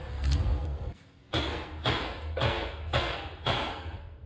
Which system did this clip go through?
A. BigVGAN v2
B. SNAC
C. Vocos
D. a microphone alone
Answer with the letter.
B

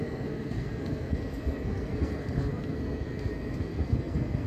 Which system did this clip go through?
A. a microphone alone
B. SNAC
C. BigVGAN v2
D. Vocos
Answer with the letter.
B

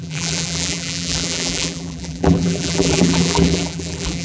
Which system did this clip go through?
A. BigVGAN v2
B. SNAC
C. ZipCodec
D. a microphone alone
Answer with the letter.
A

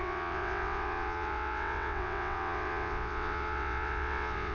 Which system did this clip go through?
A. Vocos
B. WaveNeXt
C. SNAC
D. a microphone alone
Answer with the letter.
B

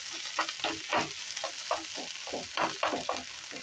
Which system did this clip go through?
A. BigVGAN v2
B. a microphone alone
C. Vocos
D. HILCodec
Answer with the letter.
B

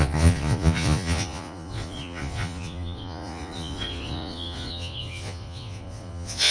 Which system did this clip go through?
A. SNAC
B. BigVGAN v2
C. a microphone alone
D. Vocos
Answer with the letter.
D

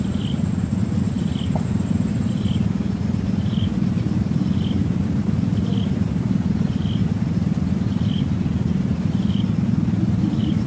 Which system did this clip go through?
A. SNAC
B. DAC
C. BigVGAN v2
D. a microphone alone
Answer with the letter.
D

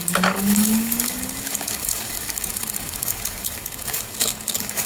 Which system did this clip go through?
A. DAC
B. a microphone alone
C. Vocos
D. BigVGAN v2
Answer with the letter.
A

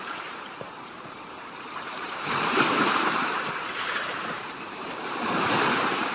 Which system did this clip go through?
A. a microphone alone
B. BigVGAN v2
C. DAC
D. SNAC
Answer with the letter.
B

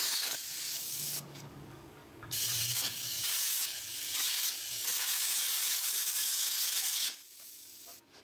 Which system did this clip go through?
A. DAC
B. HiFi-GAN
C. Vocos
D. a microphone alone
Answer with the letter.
A